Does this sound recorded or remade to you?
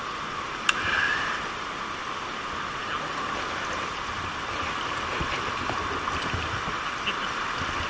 recorded